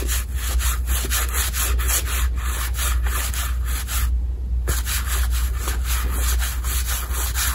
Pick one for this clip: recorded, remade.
recorded